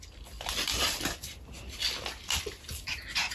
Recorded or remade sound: recorded